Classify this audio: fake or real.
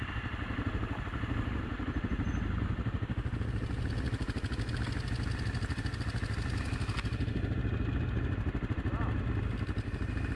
real